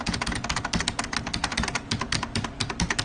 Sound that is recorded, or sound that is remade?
recorded